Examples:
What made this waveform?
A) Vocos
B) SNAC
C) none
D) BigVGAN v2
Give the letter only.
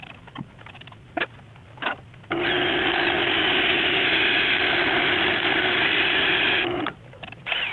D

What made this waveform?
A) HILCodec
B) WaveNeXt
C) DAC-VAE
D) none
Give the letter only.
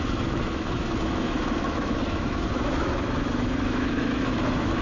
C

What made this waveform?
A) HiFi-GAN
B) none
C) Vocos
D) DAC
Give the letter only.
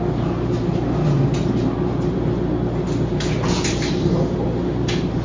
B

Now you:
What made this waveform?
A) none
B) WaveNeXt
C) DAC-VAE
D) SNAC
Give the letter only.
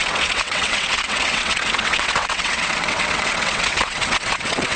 B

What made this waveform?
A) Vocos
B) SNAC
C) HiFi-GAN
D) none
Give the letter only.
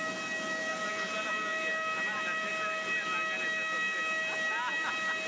D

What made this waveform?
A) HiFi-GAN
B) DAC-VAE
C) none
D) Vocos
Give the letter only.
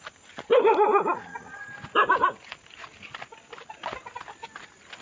C